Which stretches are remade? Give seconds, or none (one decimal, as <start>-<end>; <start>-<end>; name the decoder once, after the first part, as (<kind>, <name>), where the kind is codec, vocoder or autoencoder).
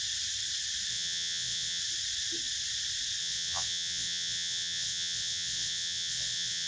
0.9-1.8 (vocoder, WaveNeXt); 3.2-6.7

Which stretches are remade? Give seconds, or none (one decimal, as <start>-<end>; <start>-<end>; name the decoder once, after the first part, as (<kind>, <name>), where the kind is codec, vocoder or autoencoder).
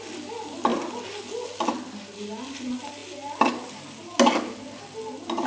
none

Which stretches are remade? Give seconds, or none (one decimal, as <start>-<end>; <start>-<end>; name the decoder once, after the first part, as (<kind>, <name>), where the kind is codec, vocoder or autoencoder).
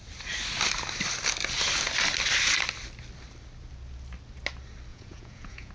4.9-5.7 (vocoder, Vocos)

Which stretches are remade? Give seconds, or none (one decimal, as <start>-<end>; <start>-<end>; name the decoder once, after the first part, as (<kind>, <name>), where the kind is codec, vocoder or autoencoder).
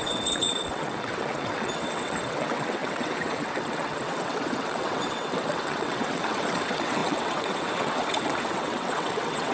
0.0-9.5 (vocoder, WaveNeXt)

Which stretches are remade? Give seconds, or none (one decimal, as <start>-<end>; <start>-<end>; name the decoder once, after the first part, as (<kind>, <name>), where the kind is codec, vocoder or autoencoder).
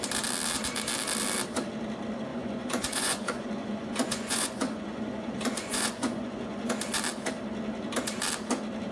2.3-6.7 (vocoder, Vocos)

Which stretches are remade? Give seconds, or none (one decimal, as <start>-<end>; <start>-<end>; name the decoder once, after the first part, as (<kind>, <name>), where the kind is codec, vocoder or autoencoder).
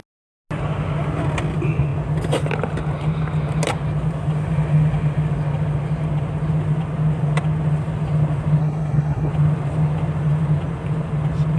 8.6-9.3 (codec, SNAC)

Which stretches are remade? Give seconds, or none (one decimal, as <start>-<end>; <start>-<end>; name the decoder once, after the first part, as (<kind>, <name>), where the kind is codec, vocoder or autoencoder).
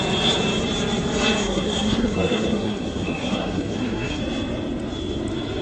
1.4-4.2 (codec, SNAC)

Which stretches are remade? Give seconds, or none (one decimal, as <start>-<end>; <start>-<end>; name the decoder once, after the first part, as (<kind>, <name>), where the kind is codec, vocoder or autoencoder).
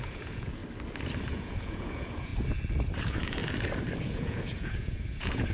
0.0-0.6 (vocoder, Vocos); 1.3-2.3; 3.0-3.4; 4.0-5.5